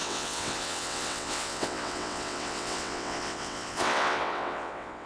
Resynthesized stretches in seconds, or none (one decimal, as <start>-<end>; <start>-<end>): 0.0-5.1